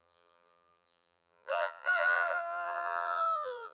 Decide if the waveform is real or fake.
fake